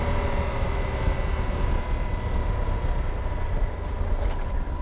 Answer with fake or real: real